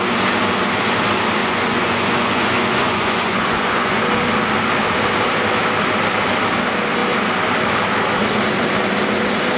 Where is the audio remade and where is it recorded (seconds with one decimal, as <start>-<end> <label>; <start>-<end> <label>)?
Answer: 0.0-1.4 recorded; 1.4-4.1 remade; 4.1-9.6 recorded